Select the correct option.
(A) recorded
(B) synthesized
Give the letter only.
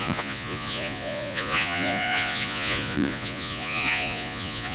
B